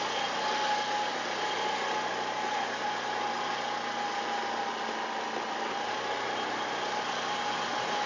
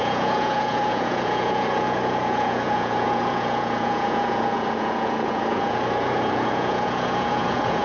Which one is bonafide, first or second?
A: first